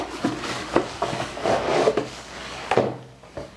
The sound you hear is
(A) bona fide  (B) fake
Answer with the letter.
B